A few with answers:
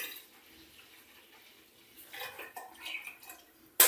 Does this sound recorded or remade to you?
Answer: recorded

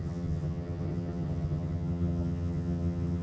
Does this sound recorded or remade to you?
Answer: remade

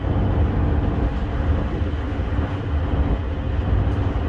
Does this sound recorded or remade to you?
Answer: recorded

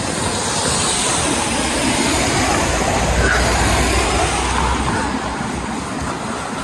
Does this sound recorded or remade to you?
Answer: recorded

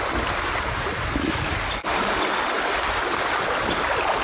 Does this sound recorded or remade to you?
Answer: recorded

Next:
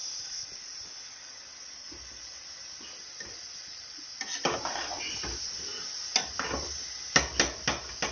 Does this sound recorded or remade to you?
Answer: recorded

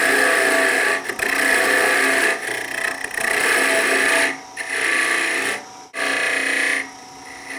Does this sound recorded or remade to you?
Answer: recorded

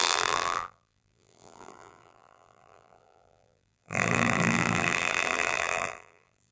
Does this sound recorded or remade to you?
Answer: remade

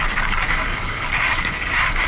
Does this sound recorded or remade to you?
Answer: remade